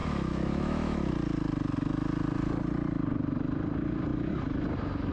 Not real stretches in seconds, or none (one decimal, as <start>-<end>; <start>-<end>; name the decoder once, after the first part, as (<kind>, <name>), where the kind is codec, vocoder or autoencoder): 0.0-1.1 (autoencoder, DAC-VAE)